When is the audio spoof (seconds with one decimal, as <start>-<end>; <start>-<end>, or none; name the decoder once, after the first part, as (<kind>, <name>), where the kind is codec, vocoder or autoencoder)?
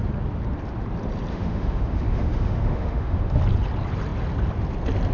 1.3-3.4 (autoencoder, DAC-VAE)